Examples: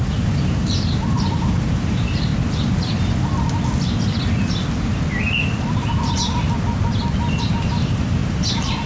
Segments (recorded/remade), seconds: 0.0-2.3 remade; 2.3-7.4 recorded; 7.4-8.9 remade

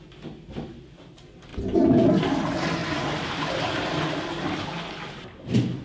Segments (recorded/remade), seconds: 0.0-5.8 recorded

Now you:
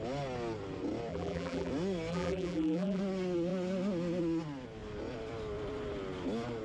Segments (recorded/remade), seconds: 0.0-1.1 recorded; 1.1-1.7 remade; 1.7-2.1 recorded; 2.1-3.0 remade; 3.0-6.6 recorded